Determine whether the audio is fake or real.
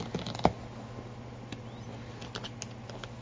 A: real